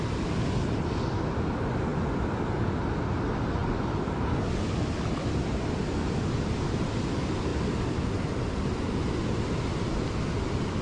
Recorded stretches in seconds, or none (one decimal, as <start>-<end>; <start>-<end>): 0.0-10.8